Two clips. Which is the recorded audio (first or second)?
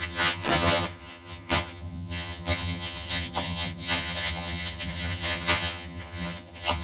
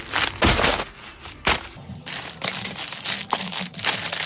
second